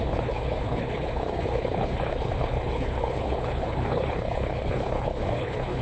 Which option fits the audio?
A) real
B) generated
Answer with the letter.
B